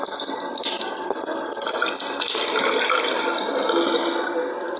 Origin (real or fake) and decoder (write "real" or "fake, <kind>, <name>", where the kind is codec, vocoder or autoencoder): real